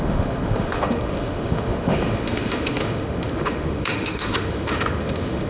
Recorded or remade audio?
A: remade